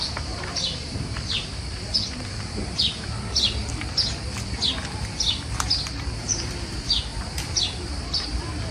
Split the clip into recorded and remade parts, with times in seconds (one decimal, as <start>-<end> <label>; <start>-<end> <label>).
0.0-3.6 remade; 3.6-6.2 recorded; 6.2-7.1 remade; 7.1-7.6 recorded; 7.6-8.7 remade